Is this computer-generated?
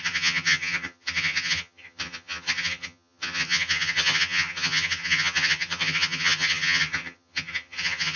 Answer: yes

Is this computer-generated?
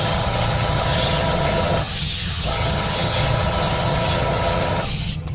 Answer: yes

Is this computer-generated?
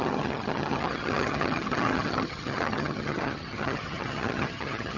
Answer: yes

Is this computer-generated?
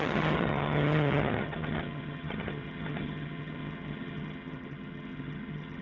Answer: yes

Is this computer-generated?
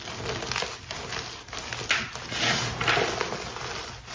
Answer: no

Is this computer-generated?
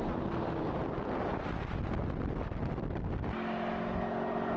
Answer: no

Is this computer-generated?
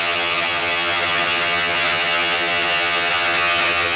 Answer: yes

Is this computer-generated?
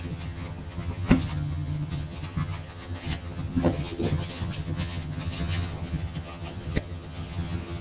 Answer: yes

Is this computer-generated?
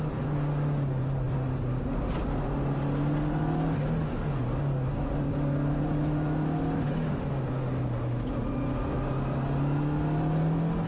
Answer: no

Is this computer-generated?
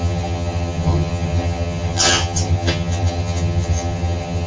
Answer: yes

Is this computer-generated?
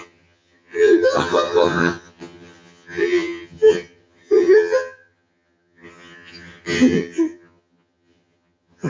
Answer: yes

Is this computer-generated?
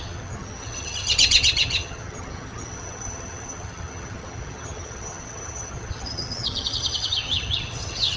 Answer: yes